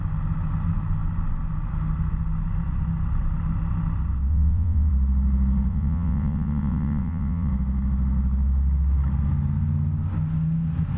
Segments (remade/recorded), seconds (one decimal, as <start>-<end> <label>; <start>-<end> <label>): 0.0-4.3 recorded; 4.3-4.9 remade; 4.9-5.7 recorded; 5.7-7.5 remade; 7.5-11.0 recorded